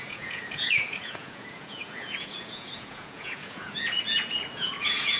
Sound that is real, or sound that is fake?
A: fake